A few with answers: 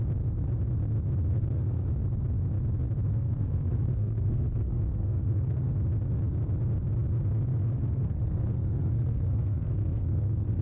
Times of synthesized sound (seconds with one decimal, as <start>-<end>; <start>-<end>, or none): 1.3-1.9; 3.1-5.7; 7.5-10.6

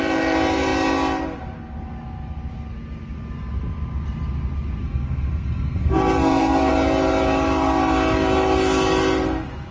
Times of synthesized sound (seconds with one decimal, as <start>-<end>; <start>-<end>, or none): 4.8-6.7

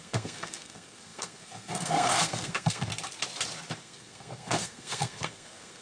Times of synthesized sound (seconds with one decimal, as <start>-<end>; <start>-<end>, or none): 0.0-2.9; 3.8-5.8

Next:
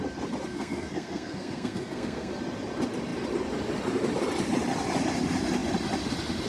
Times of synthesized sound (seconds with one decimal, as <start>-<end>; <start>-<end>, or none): 0.5-2.3